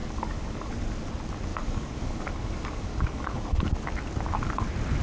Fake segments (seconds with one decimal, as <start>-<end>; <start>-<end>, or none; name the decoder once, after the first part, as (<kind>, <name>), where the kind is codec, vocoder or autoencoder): 0.0-0.7 (codec, DAC); 1.5-3.7